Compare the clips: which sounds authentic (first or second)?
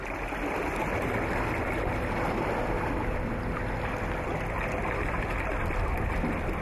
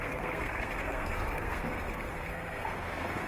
first